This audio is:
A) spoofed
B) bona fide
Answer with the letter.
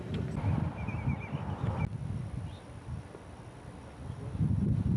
B